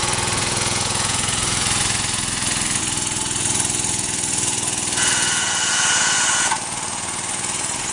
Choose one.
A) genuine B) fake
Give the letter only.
B